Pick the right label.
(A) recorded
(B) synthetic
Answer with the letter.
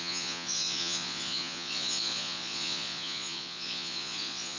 B